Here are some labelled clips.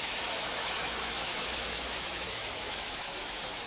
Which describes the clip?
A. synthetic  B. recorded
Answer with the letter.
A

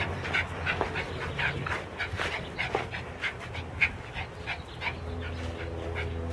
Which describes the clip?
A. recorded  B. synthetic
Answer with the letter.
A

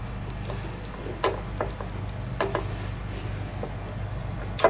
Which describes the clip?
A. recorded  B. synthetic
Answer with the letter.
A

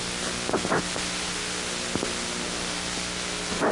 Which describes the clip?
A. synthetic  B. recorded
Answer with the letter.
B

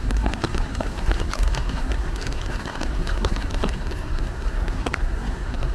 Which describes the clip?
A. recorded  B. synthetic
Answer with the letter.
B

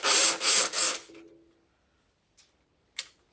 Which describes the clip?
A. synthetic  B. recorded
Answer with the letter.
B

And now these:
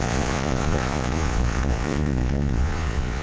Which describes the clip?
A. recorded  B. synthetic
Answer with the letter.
B